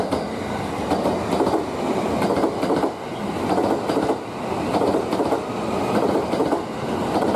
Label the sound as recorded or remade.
recorded